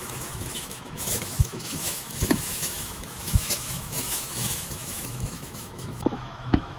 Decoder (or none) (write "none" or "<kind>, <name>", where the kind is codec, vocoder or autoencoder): autoencoder, DAC-VAE